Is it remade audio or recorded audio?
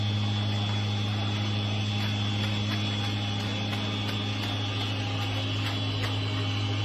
recorded